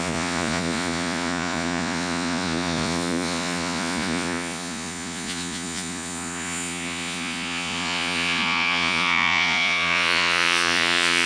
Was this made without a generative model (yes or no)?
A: no